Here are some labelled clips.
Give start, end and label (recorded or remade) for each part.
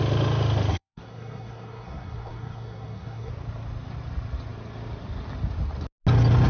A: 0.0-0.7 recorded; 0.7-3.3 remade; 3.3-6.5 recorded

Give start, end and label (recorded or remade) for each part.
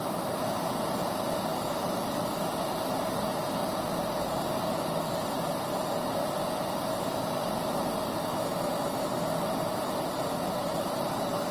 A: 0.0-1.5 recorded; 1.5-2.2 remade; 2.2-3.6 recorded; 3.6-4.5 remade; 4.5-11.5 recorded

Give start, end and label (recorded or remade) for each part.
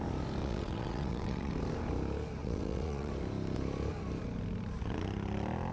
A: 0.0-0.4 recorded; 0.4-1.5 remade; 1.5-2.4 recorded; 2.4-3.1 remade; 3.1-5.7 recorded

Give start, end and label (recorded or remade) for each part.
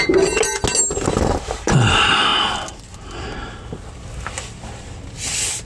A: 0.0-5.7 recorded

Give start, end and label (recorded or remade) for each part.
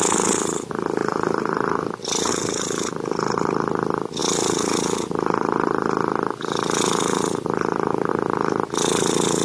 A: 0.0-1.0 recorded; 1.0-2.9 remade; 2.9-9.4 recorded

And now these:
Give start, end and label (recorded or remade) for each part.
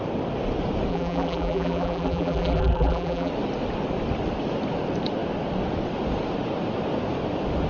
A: 0.0-0.9 recorded; 0.9-3.3 remade; 3.3-7.7 recorded